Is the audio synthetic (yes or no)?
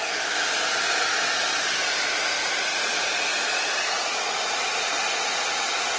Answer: no